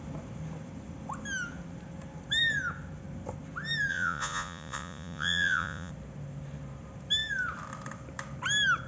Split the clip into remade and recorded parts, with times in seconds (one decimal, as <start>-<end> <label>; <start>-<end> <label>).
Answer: 0.0-3.9 recorded; 3.9-5.9 remade; 5.9-8.9 recorded